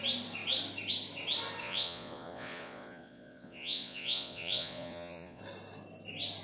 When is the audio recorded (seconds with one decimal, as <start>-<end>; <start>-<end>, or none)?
0.0-1.6; 5.4-6.4